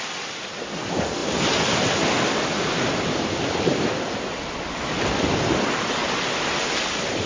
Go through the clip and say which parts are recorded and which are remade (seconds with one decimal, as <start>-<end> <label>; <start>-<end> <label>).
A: 0.0-7.3 recorded